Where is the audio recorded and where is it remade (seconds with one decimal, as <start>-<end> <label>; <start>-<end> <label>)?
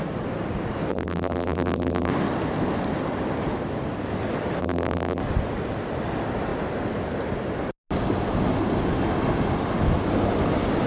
0.0-0.9 recorded; 0.9-2.1 remade; 2.1-4.6 recorded; 4.6-5.2 remade; 5.2-10.9 recorded